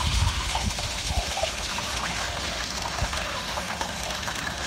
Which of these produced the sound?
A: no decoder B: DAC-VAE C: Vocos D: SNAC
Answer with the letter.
B